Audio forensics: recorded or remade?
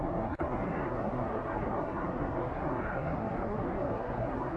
remade